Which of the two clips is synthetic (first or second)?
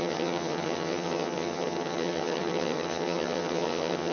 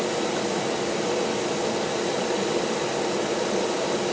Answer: first